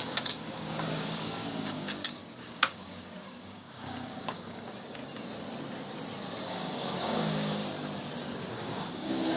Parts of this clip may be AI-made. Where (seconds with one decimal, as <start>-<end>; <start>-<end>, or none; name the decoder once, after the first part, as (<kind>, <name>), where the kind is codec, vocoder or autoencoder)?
0.0-5.0 (codec, DAC); 6.4-7.6; 8.5-9.4